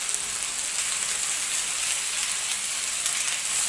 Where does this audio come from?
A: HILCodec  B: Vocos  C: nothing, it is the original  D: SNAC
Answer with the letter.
C